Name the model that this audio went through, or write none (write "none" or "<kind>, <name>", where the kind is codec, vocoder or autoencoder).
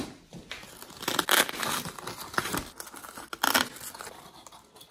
none